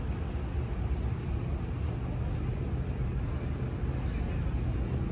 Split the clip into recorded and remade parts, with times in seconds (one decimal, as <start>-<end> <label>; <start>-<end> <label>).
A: 0.0-5.1 recorded